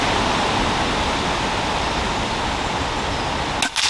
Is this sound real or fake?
real